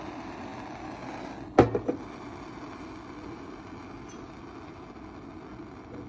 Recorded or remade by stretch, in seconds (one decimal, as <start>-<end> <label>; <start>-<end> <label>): 0.0-6.1 recorded